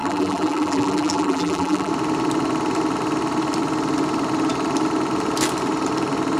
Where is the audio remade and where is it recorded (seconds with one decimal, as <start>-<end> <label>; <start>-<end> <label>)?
0.0-1.9 remade; 1.9-6.4 recorded